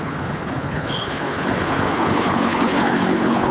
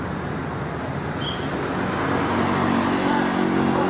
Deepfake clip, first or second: first